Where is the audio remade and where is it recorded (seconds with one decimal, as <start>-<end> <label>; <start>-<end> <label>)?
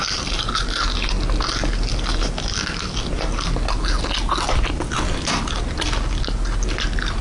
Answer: 0.0-7.2 recorded